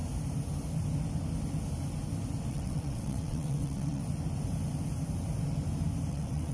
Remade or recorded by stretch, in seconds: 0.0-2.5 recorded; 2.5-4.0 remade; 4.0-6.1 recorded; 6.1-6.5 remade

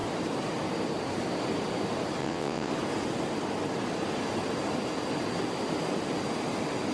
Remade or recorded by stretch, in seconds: 0.0-2.2 recorded; 2.2-2.7 remade; 2.7-6.9 recorded

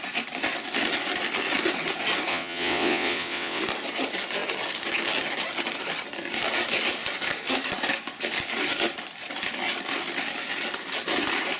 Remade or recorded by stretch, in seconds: 0.0-2.3 recorded; 2.3-3.6 remade; 3.6-11.6 recorded

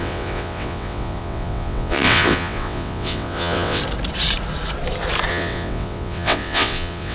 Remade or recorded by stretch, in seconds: 0.0-3.8 remade; 3.8-5.3 recorded; 5.3-7.1 remade

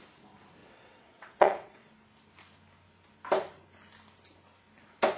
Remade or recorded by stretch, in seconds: 0.0-0.6 recorded; 0.6-1.9 remade; 1.9-5.2 recorded

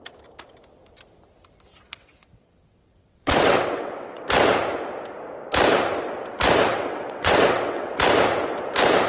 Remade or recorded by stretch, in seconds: 0.0-1.7 recorded; 1.7-4.2 remade; 4.2-6.7 recorded; 6.7-7.9 remade; 7.9-9.1 recorded

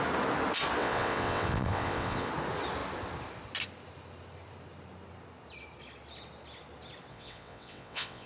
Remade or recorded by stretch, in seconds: 0.0-0.8 recorded; 0.8-2.3 remade; 2.3-7.1 recorded; 7.1-8.3 remade